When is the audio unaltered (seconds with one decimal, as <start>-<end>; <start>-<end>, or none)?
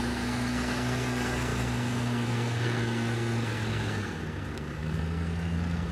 none